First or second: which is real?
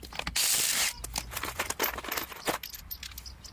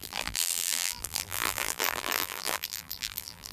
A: first